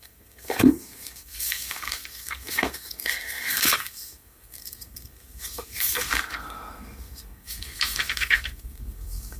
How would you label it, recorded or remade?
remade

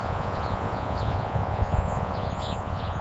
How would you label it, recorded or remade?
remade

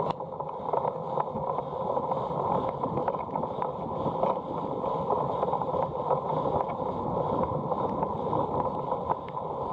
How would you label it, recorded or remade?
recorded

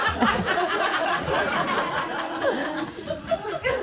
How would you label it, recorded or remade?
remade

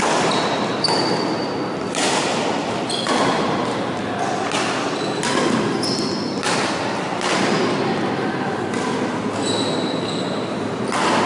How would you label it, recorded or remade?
recorded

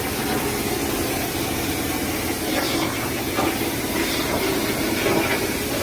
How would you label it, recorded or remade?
recorded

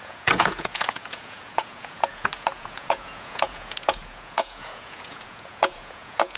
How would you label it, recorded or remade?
remade